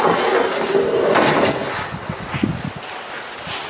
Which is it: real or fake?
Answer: real